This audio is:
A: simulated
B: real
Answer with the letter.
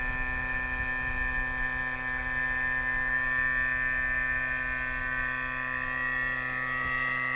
B